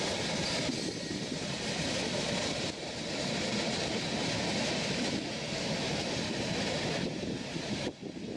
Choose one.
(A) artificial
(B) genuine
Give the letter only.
A